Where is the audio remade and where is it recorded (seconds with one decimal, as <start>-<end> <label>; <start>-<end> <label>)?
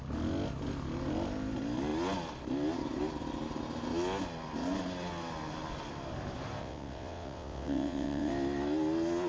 0.0-6.6 recorded; 6.6-8.3 remade; 8.3-9.3 recorded